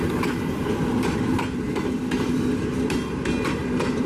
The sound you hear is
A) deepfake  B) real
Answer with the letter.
B